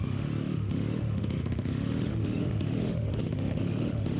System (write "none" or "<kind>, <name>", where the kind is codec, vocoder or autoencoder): autoencoder, DAC-VAE